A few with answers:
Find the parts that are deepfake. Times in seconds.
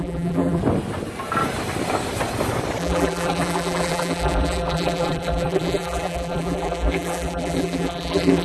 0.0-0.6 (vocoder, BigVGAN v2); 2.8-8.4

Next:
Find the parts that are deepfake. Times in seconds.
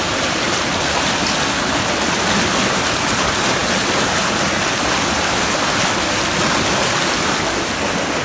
none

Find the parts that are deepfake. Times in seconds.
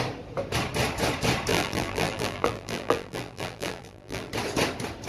1.5-4.3 (vocoder, BigVGAN v2)